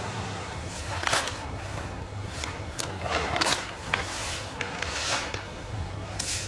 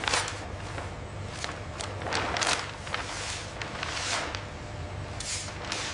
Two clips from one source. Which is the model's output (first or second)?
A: first